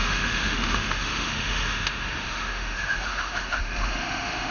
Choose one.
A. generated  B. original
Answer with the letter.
A